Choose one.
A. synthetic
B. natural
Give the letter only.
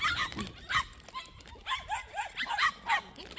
B